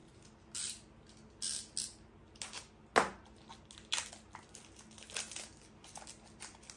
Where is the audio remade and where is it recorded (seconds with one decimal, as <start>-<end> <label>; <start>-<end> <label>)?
0.0-6.8 recorded